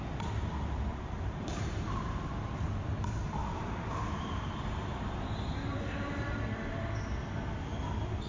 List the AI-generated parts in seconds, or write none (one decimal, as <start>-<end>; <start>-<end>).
0.9-2.2; 3.4-4.5; 4.9-5.8